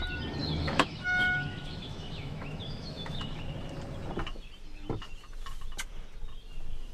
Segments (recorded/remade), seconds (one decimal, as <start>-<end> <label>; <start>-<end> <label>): 0.0-0.4 recorded; 0.4-3.4 remade; 3.4-6.9 recorded